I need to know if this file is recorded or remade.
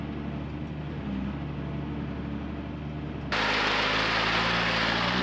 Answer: recorded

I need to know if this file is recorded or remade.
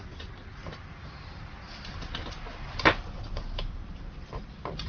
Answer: remade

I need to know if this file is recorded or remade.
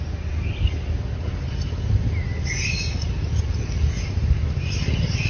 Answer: recorded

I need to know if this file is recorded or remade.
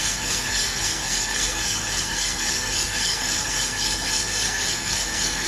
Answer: remade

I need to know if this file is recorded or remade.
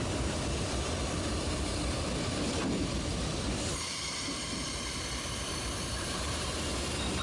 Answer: remade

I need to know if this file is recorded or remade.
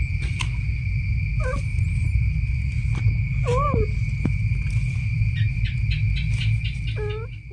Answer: recorded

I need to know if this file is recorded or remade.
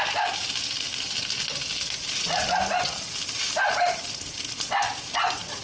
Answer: recorded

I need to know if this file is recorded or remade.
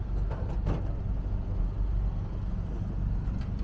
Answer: recorded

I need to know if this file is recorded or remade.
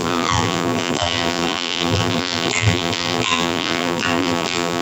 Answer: remade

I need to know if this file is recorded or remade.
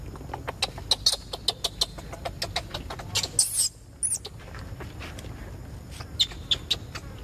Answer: recorded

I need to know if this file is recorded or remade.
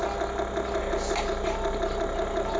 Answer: recorded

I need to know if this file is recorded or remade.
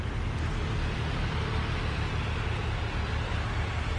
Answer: recorded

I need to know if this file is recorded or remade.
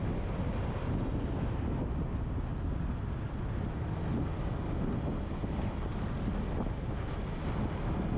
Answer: recorded